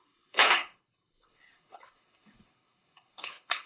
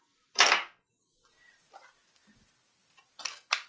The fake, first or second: first